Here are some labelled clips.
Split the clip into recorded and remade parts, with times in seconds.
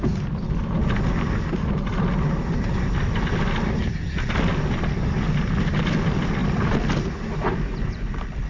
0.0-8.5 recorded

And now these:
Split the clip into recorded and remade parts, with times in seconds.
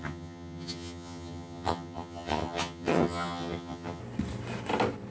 0.0-4.0 remade; 4.0-5.1 recorded